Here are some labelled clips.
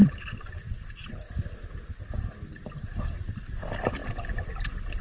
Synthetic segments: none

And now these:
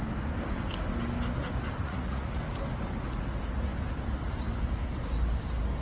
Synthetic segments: 1.8-2.4 (vocoder, Vocos)

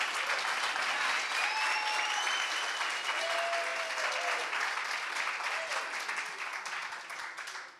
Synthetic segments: none

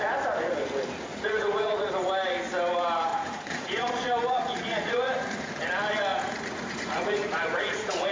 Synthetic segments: 1.1-1.9 (vocoder, Vocos); 3.1-5.6; 6.1-8.1